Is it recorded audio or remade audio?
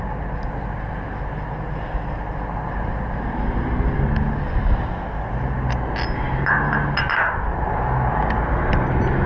recorded